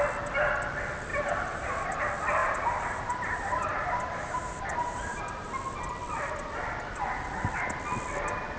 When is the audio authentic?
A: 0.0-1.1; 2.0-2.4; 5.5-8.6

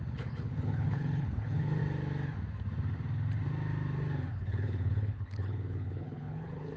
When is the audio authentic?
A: 1.8-4.3

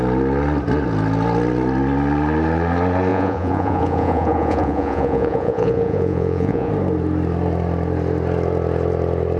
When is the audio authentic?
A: 0.0-3.1; 6.7-9.4

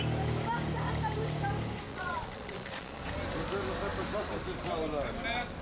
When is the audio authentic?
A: 0.0-1.9; 3.0-5.6

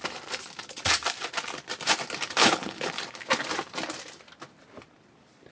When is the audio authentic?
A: 0.0-2.4; 2.9-5.5

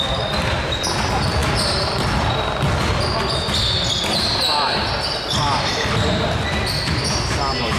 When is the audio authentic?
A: 0.0-7.8